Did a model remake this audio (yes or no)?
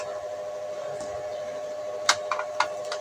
no